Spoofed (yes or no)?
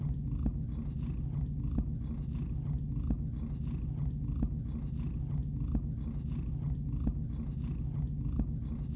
no